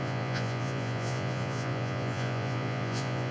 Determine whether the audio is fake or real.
fake